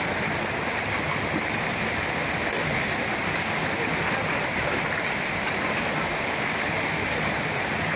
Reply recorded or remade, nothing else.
recorded